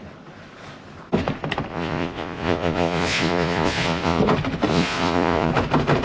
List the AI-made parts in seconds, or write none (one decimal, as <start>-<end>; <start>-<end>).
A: 1.7-4.2; 4.7-5.5